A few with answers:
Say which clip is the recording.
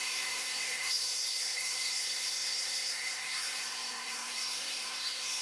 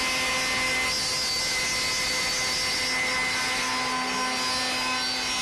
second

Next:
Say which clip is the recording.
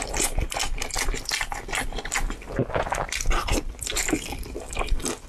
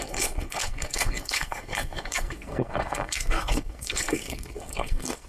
first